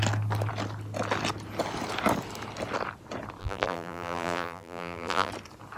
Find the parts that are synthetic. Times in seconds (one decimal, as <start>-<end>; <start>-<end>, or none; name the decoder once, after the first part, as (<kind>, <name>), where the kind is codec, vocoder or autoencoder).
3.4-5.3 (vocoder, BigVGAN v2)

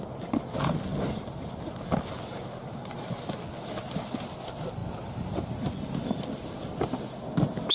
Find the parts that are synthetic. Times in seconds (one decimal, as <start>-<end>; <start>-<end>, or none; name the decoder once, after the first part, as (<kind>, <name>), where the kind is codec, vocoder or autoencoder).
0.9-1.7 (vocoder, BigVGAN v2)

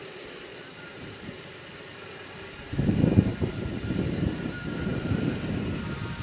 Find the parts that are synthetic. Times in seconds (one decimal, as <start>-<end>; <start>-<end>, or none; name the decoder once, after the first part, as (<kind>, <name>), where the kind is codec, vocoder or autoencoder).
0.0-4.9 (vocoder, BigVGAN v2); 5.8-6.2